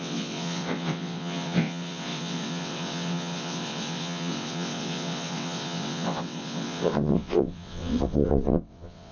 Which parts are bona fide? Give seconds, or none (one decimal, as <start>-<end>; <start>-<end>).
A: none